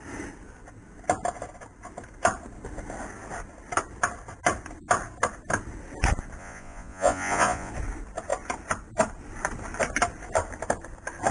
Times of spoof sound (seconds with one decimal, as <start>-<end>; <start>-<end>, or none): 6.4-7.7